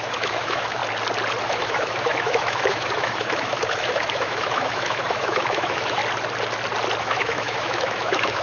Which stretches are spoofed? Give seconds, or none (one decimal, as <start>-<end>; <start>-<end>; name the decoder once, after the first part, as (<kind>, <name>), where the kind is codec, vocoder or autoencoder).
0.0-0.8 (autoencoder, DAC-VAE); 1.4-6.0; 7.0-8.4